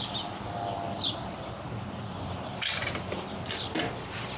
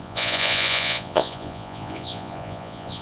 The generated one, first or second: second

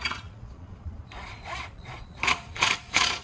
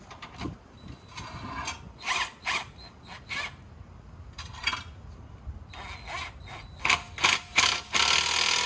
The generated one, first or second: first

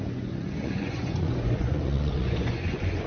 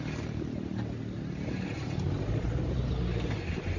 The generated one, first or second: first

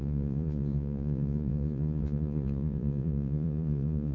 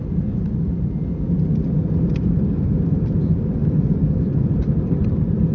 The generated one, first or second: first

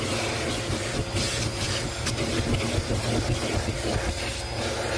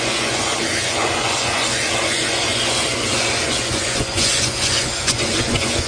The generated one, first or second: second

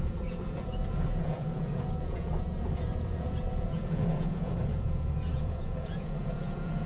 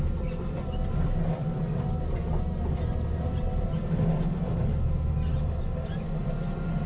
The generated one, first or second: first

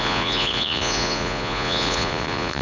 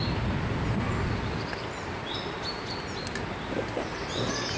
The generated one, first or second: first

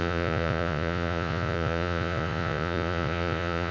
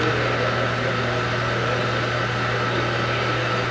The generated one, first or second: first